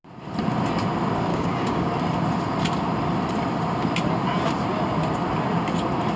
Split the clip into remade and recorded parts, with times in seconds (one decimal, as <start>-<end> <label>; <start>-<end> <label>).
0.0-1.3 recorded; 1.3-1.9 remade; 1.9-6.2 recorded